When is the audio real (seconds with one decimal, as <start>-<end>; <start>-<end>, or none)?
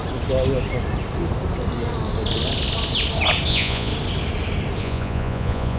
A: 0.0-3.5; 3.9-4.8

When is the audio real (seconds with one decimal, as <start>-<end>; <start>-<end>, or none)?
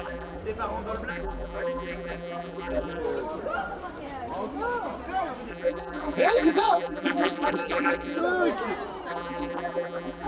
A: 0.4-1.1; 3.0-5.5; 8.2-9.1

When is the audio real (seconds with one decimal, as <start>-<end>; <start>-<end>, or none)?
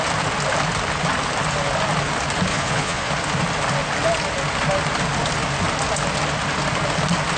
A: 0.0-2.5; 3.1-7.4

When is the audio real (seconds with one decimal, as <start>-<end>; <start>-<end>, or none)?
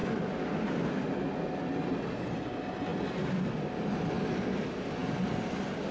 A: 0.0-5.0; 5.5-5.9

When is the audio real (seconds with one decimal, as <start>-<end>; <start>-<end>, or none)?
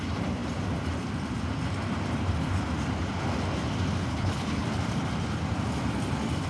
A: 0.0-4.1; 4.6-6.5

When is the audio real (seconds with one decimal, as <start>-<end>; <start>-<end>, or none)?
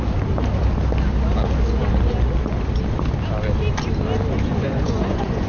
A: 0.0-4.5